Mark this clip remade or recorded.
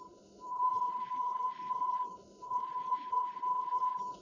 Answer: remade